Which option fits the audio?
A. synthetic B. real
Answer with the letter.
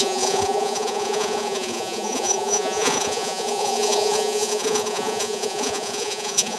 A